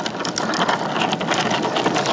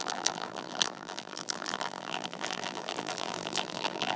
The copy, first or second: second